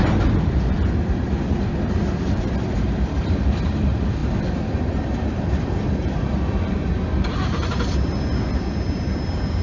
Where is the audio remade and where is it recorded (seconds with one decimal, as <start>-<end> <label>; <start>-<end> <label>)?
0.0-9.6 remade